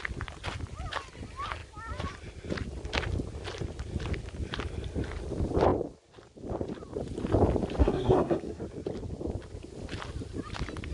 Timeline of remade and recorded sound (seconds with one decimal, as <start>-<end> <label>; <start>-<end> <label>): 0.0-7.8 recorded; 7.8-8.6 remade; 8.6-10.9 recorded